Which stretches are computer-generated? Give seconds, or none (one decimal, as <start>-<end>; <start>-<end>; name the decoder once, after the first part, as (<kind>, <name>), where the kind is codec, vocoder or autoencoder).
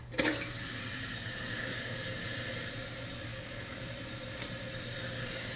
1.1-2.2 (codec, DAC); 3.3-3.9